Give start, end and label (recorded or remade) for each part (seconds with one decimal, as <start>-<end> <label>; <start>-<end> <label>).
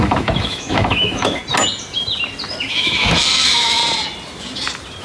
0.0-1.4 remade; 1.4-2.7 recorded; 2.7-3.8 remade; 3.8-5.0 recorded